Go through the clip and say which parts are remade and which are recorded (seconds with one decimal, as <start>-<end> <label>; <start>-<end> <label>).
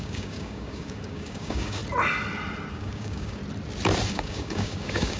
0.0-1.8 remade; 1.8-2.7 recorded; 2.7-3.4 remade; 3.4-4.1 recorded; 4.1-5.2 remade